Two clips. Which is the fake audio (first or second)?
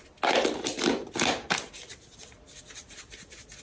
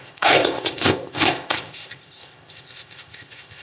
second